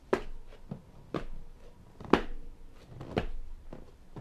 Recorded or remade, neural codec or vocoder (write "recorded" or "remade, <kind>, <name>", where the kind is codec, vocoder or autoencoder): recorded